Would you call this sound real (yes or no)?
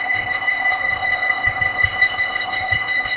no